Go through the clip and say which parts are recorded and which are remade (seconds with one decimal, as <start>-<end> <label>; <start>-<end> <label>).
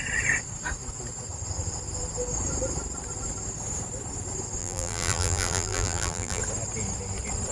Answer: 0.0-4.6 recorded; 4.6-6.4 remade; 6.4-7.5 recorded